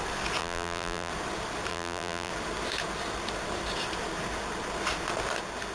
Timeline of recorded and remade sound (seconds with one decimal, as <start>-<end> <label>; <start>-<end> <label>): 0.0-0.4 recorded; 0.4-1.1 remade; 1.1-1.7 recorded; 1.7-2.3 remade; 2.3-5.7 recorded